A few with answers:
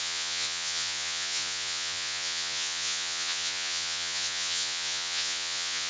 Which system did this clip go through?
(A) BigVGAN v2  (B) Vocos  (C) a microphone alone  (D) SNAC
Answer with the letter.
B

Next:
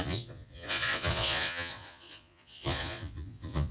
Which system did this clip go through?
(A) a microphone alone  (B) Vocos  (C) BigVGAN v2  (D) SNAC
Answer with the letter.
B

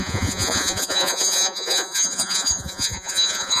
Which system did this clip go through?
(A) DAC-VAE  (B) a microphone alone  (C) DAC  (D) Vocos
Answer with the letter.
D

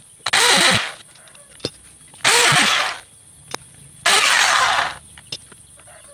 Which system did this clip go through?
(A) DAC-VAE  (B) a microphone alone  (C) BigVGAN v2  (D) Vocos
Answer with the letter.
B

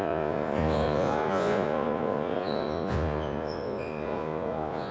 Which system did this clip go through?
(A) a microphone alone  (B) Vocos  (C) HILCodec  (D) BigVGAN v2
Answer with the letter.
B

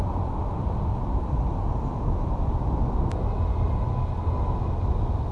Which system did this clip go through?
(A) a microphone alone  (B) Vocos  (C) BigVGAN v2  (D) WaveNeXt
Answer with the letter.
A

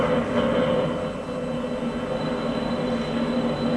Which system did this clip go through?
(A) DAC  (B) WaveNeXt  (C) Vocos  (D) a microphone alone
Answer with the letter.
D